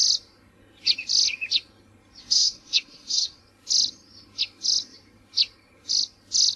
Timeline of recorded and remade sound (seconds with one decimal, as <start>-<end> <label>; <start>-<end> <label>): 0.0-2.2 recorded; 2.2-3.4 remade; 3.4-6.6 recorded